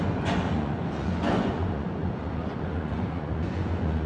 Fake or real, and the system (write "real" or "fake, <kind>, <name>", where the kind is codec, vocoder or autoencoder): fake, vocoder, Vocos